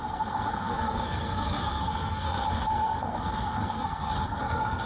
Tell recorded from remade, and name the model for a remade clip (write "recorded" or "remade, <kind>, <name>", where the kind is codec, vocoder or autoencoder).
remade, codec, SNAC